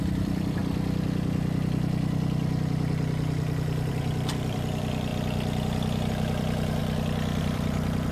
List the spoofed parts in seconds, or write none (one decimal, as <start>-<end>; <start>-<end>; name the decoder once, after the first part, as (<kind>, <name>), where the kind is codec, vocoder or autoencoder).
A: 0.0-0.6 (vocoder, BigVGAN v2); 3.9-5.1; 6.1-6.8; 7.4-8.1